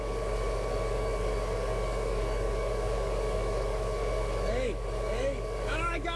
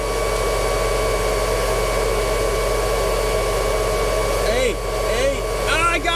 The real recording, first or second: second